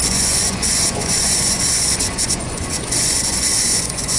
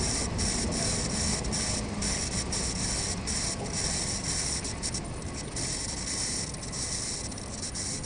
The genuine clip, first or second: second